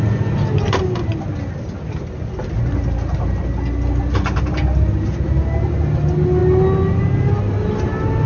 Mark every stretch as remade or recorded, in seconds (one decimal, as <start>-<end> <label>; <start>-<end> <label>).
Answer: 0.0-8.3 recorded